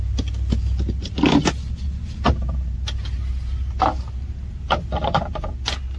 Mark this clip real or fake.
real